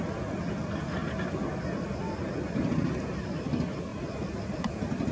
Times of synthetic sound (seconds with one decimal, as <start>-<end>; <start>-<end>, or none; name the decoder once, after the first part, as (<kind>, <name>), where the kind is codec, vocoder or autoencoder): none